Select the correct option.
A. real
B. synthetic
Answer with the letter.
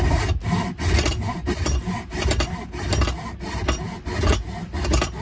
A